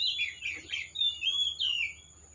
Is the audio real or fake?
real